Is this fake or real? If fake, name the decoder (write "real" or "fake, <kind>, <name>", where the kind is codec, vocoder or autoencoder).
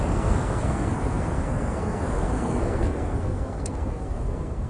fake, codec, SNAC